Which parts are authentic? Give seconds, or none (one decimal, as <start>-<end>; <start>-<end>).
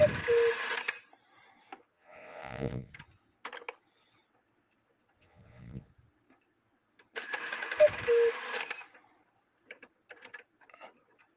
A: 0.0-1.9; 2.9-5.2; 5.9-11.4